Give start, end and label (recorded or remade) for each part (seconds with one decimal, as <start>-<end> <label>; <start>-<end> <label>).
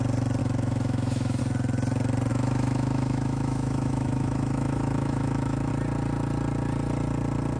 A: 0.0-0.4 recorded; 0.4-1.4 remade; 1.4-2.3 recorded; 2.3-5.7 remade; 5.7-7.6 recorded